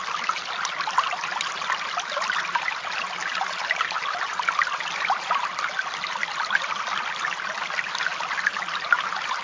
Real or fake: real